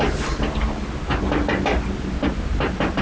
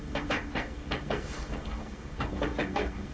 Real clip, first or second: first